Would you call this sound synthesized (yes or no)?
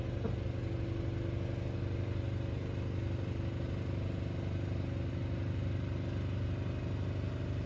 no